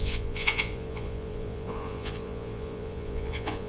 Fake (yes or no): yes